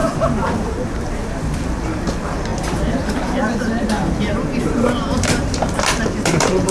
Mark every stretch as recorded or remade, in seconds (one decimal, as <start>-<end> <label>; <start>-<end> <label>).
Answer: 0.0-1.4 remade; 1.4-2.5 recorded; 2.5-6.7 remade